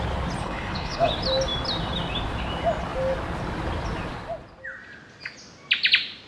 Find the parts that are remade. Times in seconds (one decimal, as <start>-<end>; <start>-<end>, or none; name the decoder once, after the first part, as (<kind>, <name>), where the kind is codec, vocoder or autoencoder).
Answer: 0.4-1.1 (codec, HILCodec)